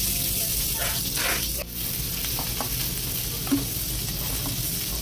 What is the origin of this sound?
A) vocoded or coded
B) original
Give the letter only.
B